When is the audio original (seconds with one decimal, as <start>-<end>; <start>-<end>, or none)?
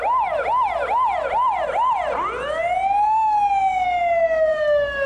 0.0-4.5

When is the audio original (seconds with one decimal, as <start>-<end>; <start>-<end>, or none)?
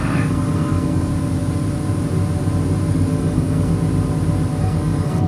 1.1-2.9; 3.7-4.6